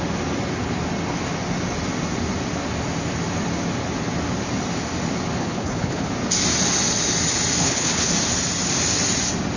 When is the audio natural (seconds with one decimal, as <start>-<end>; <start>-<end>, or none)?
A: 0.0-5.4; 6.1-7.6; 8.1-9.6